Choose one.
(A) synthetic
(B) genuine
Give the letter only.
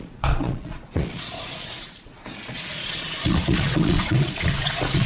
A